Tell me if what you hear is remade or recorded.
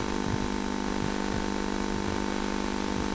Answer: recorded